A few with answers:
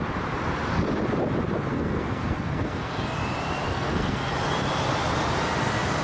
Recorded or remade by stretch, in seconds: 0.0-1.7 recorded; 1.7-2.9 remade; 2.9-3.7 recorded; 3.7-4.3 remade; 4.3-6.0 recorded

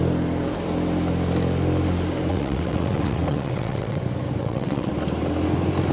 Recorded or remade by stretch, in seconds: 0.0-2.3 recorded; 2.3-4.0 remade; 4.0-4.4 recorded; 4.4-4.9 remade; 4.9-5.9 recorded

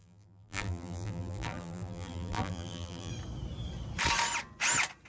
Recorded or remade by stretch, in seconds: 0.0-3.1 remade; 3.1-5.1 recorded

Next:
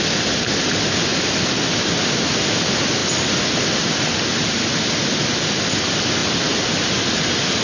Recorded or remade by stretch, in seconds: 0.0-7.6 recorded

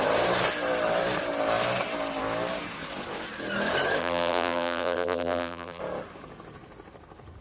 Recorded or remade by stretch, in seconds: 0.0-4.0 recorded; 4.0-5.8 remade; 5.8-7.4 recorded